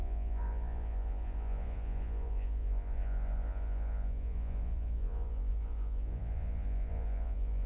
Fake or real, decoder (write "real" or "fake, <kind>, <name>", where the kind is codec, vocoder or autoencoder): fake, vocoder, Vocos